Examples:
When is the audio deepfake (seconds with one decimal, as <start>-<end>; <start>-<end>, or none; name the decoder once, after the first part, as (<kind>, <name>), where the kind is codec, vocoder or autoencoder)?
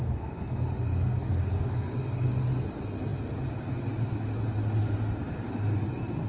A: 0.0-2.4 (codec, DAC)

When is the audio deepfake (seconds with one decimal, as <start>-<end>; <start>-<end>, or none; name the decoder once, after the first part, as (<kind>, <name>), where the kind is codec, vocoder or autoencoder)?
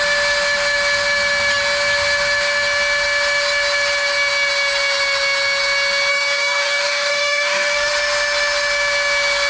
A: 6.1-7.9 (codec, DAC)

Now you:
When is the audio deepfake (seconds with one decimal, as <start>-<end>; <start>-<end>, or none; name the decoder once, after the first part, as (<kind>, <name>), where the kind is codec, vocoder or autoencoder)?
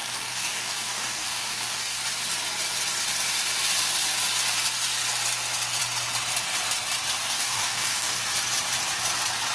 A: 0.0-2.0 (codec, DAC); 7.2-8.2